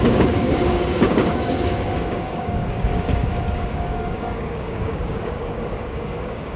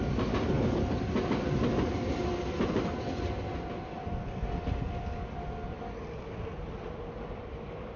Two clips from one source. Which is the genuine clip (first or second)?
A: second